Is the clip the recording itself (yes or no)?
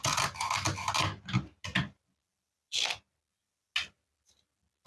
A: yes